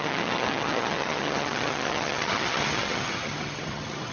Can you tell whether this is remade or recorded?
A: remade